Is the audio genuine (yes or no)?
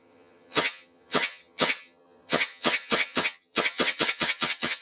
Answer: no